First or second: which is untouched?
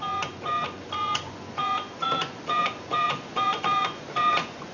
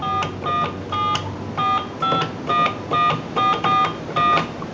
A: second